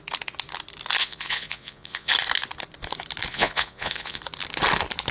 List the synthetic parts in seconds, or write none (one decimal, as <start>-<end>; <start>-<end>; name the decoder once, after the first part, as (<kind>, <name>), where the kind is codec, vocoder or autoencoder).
1.0-2.1 (vocoder, Vocos); 3.3-4.2